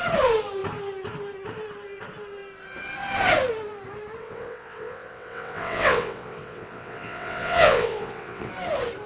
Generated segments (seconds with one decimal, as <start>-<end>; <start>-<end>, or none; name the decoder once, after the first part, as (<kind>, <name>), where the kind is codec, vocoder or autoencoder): 4.2-8.5 (vocoder, WaveNeXt)